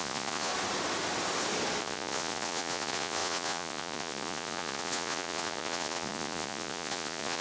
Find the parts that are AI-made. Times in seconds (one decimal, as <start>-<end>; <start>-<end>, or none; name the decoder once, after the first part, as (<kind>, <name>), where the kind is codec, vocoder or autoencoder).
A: 0.0-0.5 (vocoder, Vocos); 1.8-7.4